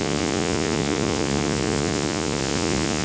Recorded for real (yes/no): no